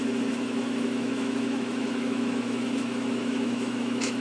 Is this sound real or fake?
fake